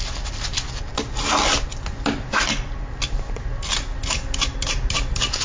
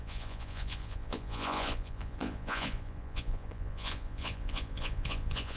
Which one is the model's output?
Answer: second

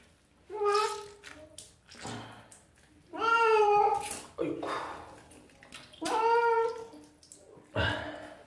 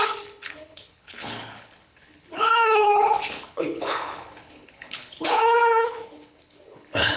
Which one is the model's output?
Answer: second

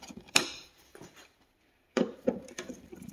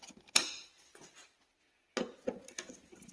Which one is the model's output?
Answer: first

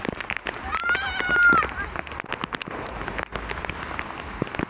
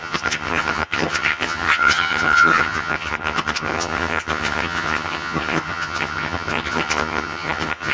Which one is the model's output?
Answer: second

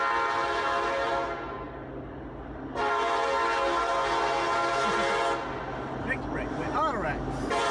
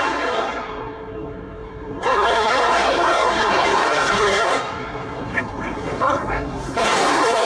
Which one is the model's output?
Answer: second